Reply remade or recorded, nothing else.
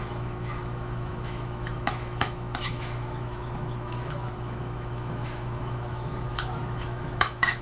remade